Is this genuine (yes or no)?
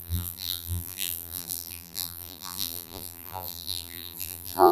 no